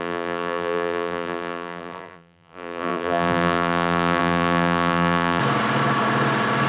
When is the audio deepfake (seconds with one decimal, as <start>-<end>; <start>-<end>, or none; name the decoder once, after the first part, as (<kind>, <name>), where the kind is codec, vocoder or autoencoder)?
0.0-5.4 (vocoder, BigVGAN v2)